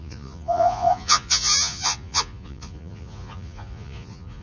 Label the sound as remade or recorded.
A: remade